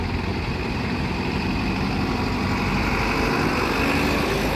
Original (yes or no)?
yes